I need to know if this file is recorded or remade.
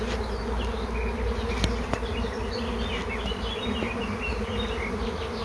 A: recorded